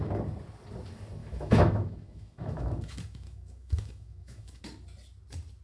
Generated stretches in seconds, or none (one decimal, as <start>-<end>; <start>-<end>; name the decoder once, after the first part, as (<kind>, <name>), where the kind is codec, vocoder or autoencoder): 1.2-4.6 (autoencoder, DAC-VAE)